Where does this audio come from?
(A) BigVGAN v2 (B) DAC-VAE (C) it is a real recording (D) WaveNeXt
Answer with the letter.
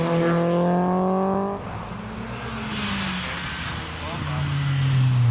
C